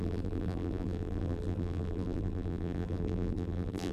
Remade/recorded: remade